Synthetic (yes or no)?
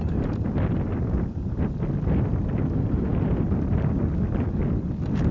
no